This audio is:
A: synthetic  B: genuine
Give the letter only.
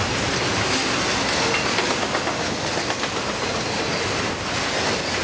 B